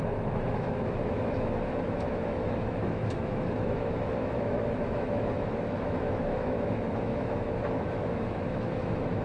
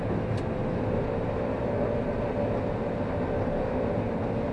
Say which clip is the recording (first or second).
second